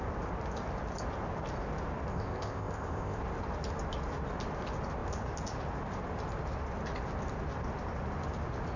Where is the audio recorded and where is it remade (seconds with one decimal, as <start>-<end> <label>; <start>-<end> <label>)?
0.0-2.1 recorded; 2.1-3.2 remade; 3.2-8.8 recorded